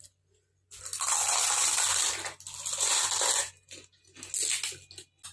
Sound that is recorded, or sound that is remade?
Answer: recorded